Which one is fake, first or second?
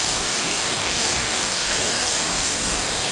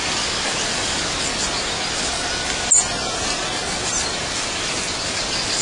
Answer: first